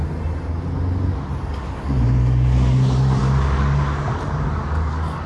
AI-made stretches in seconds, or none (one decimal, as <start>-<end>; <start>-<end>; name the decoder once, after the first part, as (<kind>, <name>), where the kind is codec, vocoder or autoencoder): 1.5-5.3 (codec, DAC)